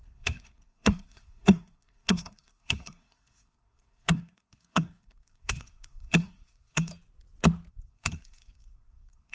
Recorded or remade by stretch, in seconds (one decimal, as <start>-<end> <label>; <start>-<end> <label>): 0.0-6.9 remade; 6.9-7.7 recorded; 7.7-9.3 remade